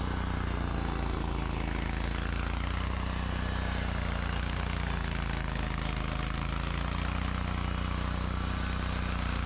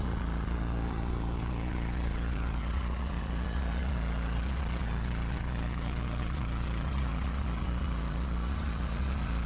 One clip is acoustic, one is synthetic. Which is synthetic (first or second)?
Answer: second